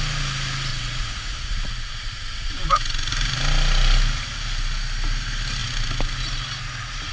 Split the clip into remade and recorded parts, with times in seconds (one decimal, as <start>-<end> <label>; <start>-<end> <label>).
0.0-0.7 recorded; 0.7-3.1 remade; 3.1-7.1 recorded